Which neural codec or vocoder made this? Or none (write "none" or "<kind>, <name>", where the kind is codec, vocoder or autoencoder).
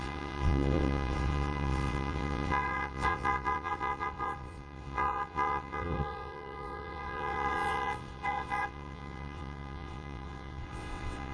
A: vocoder, WaveNeXt